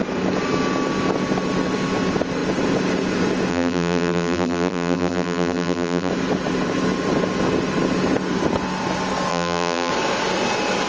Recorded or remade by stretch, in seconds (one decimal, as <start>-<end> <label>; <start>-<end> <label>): 0.0-3.5 recorded; 3.5-6.1 remade; 6.1-9.3 recorded; 9.3-9.9 remade; 9.9-10.9 recorded